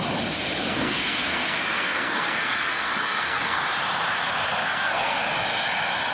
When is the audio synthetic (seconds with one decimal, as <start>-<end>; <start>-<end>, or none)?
0.6-3.6; 4.6-5.2